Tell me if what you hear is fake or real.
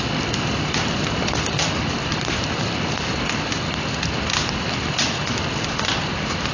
real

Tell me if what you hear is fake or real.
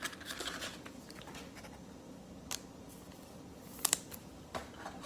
real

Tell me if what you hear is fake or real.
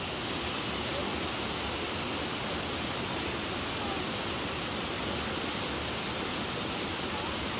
real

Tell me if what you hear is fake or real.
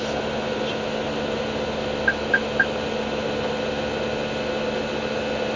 real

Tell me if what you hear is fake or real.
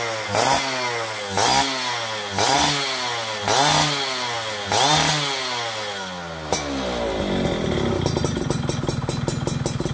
real